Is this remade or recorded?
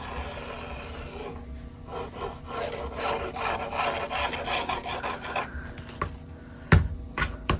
recorded